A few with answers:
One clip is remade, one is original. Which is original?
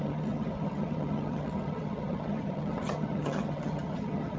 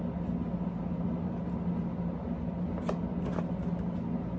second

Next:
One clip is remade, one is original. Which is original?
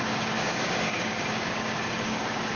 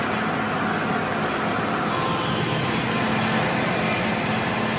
second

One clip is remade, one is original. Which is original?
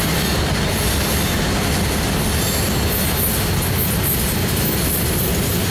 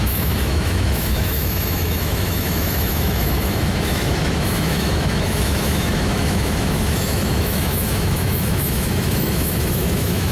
first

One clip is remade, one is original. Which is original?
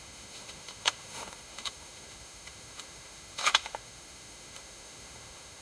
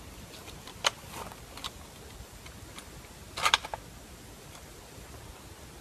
second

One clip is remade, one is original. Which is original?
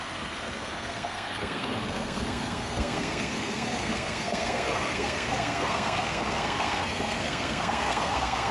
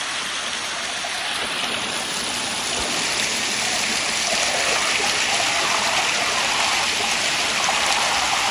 second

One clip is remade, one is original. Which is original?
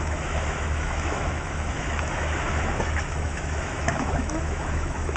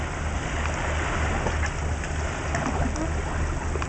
second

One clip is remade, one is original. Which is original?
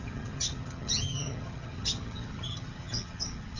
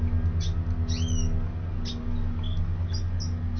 second